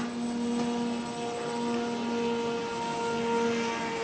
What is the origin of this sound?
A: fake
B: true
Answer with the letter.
B